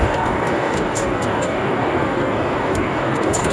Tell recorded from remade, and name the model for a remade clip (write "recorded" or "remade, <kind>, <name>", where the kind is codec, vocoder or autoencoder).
remade, codec, DAC